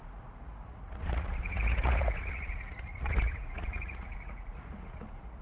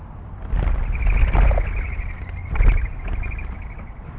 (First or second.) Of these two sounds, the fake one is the first